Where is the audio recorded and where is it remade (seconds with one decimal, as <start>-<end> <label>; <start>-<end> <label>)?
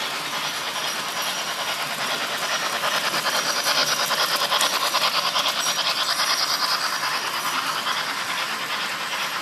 0.0-9.4 recorded